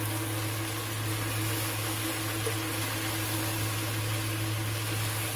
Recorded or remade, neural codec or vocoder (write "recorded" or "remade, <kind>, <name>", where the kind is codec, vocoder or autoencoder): recorded